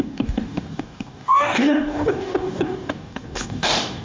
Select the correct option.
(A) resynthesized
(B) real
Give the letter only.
A